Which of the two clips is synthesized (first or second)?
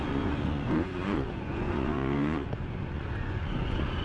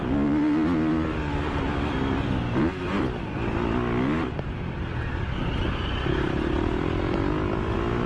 first